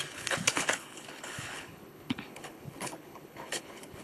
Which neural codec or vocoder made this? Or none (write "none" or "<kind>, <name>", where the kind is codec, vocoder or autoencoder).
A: codec, HILCodec